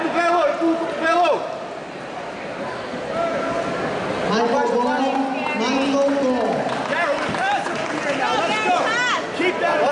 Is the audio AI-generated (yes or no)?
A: no